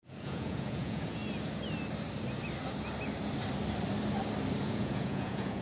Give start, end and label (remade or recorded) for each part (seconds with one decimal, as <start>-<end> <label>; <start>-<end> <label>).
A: 0.0-1.2 remade; 1.2-4.6 recorded; 4.6-5.6 remade

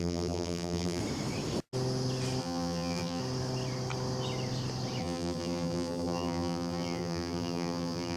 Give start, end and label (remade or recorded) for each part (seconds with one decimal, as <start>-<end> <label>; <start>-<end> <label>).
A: 0.0-1.0 remade; 1.0-2.4 recorded; 2.4-3.2 remade; 3.2-5.0 recorded; 5.0-8.2 remade

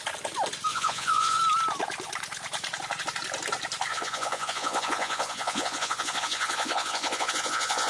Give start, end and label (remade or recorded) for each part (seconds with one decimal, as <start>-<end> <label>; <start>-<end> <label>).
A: 0.0-0.7 recorded; 0.7-1.4 remade; 1.4-3.9 recorded; 3.9-7.9 remade